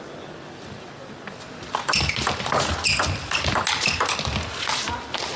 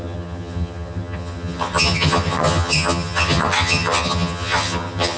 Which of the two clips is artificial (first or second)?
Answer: second